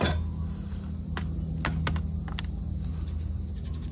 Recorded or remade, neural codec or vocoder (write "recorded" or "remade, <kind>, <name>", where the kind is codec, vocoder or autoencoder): recorded